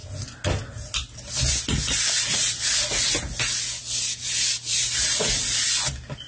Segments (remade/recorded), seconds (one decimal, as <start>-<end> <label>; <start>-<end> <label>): 0.0-6.3 recorded